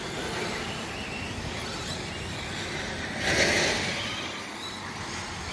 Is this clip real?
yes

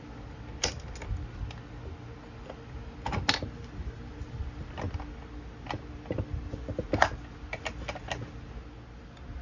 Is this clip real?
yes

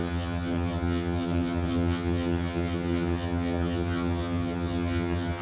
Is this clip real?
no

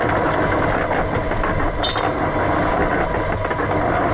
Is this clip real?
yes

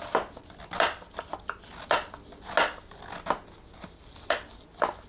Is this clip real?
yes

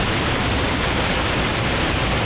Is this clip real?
yes